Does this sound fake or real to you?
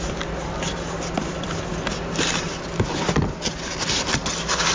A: real